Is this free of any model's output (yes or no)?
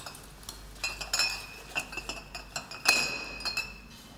yes